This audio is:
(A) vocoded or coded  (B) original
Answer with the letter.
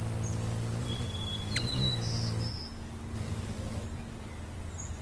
B